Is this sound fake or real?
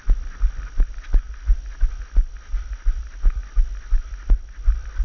real